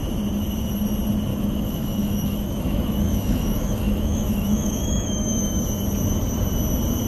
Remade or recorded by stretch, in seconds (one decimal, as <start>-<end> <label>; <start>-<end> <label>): 0.0-1.3 recorded; 1.3-5.6 remade; 5.6-7.1 recorded